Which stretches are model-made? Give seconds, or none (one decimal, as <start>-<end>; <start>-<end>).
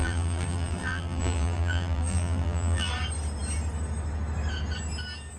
0.0-2.9